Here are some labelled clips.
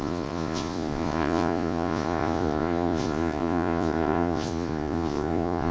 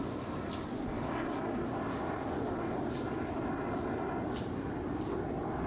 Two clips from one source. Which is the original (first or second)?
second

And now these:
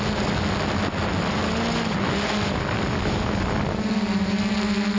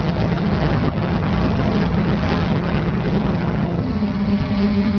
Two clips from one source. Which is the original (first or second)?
first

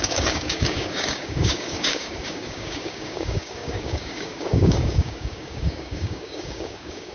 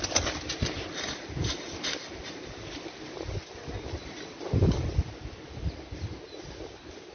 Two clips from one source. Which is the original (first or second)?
second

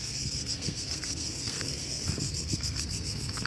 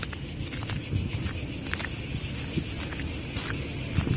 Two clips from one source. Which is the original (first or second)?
second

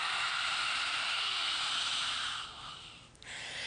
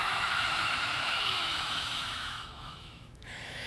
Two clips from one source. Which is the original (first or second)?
first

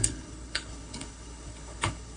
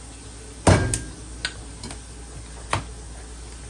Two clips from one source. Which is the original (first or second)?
second